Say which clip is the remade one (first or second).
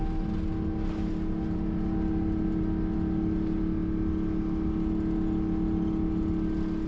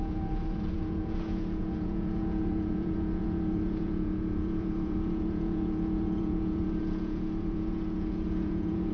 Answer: second